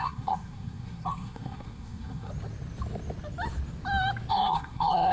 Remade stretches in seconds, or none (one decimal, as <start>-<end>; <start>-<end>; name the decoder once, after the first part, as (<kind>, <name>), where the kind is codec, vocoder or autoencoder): 0.0-2.3 (codec, SNAC); 4.3-5.1